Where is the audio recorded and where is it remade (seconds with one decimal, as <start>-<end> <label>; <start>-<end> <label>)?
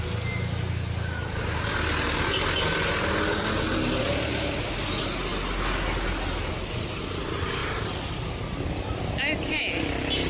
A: 0.0-10.3 recorded